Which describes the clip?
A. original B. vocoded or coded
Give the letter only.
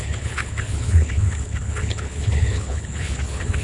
B